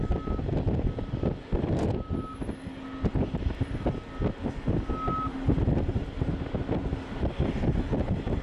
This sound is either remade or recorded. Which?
recorded